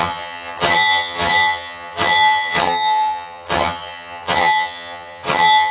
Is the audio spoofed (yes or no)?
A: yes